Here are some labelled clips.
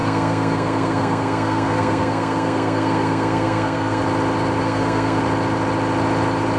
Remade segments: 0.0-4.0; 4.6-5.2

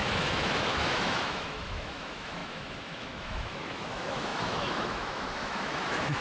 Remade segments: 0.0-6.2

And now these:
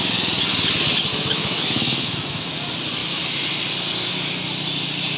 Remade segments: 1.1-2.5; 3.0-3.6

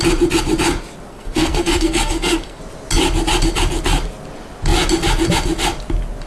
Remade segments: 1.1-2.6

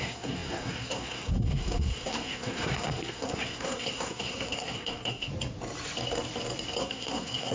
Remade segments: 0.0-5.3; 6.8-7.5

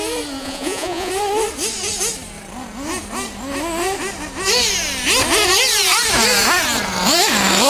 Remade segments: 0.4-1.1